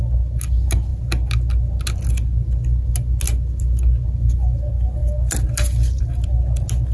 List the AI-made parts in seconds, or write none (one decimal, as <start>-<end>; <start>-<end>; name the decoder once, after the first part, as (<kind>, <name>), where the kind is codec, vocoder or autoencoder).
none